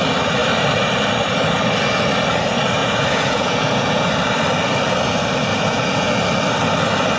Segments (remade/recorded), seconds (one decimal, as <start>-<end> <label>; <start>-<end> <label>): 0.0-2.8 recorded; 2.8-4.1 remade; 4.1-5.5 recorded; 5.5-6.1 remade; 6.1-7.2 recorded